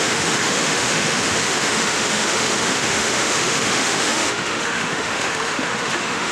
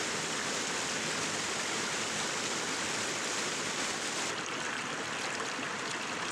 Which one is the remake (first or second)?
first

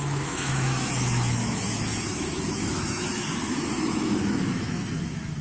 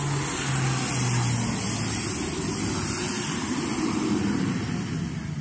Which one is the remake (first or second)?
first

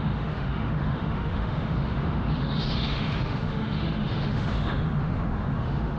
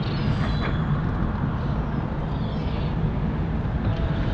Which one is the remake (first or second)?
first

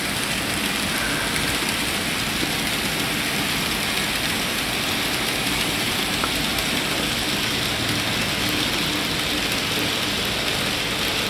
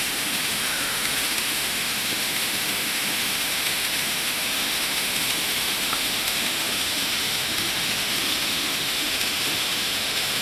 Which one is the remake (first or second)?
second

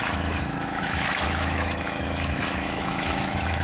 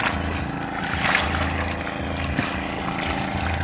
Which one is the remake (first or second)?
first